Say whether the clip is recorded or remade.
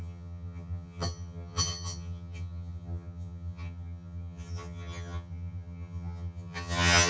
remade